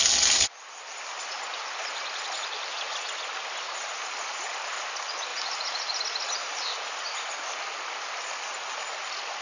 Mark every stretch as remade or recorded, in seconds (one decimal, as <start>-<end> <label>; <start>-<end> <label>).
0.0-5.3 recorded; 5.3-6.0 remade; 6.0-9.4 recorded